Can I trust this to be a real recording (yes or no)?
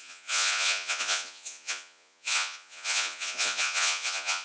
no